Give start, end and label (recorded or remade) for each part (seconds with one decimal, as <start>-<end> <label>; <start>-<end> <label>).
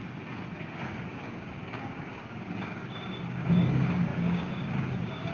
0.0-0.6 recorded; 0.6-5.3 remade